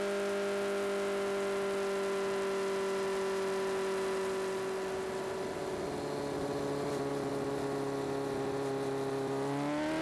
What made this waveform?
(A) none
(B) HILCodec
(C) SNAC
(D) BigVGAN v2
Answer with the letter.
A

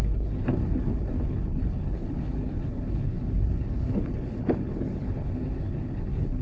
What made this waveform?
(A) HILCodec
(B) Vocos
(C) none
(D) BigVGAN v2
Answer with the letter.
A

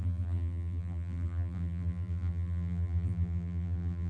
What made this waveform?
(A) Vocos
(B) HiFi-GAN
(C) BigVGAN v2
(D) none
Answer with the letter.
C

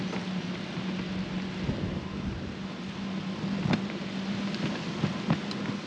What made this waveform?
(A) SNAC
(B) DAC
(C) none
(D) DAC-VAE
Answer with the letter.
C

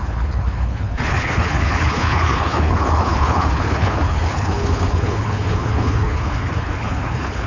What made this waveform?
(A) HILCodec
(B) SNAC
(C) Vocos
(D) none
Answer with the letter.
A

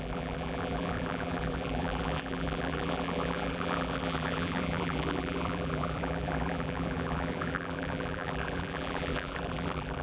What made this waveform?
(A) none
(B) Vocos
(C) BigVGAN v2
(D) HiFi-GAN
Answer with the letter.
C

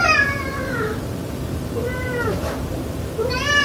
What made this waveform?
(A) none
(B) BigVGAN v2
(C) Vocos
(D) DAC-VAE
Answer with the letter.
B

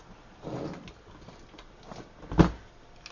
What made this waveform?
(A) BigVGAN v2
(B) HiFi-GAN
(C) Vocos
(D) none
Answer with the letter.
D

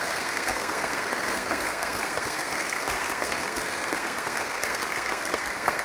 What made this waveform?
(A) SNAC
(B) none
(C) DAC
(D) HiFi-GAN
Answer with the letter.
A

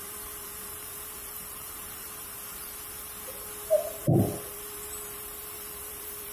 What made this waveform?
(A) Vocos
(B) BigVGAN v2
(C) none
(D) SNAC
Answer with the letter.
B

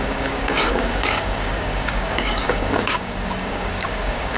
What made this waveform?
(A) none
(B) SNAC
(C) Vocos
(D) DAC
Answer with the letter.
D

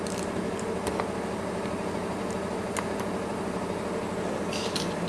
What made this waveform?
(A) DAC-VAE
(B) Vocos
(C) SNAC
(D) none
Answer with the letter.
D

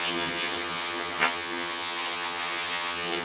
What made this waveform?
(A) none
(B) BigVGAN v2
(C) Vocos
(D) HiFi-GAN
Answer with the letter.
D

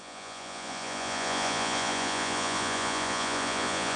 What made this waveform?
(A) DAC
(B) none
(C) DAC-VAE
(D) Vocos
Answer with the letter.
D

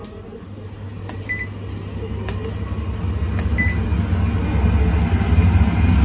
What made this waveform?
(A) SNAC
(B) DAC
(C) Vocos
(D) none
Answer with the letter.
D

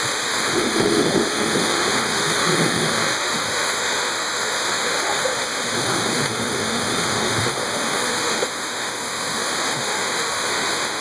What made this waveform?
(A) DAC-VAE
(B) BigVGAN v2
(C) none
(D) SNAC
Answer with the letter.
A